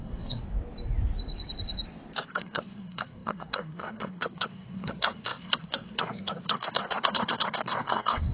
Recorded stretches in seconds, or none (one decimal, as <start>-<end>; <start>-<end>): 0.4-2.2